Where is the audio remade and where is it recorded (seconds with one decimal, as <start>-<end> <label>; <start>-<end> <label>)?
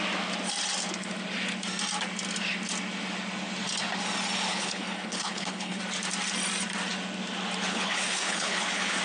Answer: 0.0-4.5 recorded; 4.5-5.8 remade; 5.8-7.7 recorded; 7.7-9.0 remade